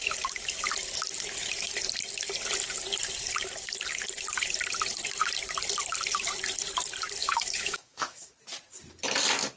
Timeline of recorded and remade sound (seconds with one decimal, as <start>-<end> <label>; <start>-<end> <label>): 0.0-7.2 recorded; 7.2-8.3 remade; 8.3-9.6 recorded